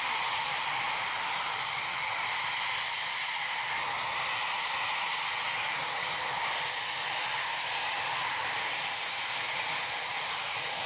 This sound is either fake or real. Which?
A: fake